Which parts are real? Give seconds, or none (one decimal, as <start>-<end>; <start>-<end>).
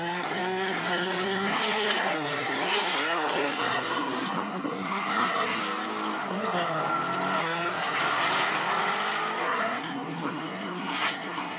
5.6-6.3; 6.8-7.4; 8.0-9.4